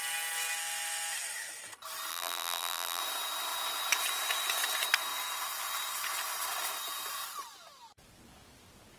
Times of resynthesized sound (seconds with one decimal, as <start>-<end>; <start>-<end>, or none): 2.1-3.0